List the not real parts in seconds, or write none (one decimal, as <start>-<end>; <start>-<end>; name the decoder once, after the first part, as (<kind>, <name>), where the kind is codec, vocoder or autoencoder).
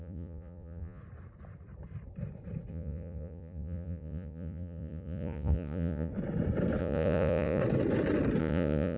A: 0.0-1.0 (vocoder, Vocos); 2.7-6.1; 6.8-7.6; 8.4-9.0